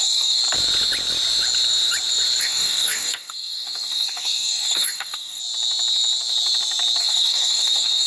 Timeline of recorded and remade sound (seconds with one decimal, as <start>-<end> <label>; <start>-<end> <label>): 0.0-0.4 remade; 0.4-2.4 recorded; 2.4-5.4 remade; 5.4-7.0 recorded; 7.0-8.1 remade